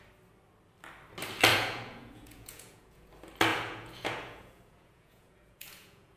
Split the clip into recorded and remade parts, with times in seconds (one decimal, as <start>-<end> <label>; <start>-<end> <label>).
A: 0.0-1.5 recorded; 1.5-3.1 remade; 3.1-3.5 recorded; 3.5-6.2 remade